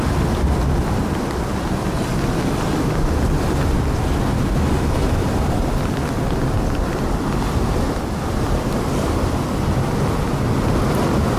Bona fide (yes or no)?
yes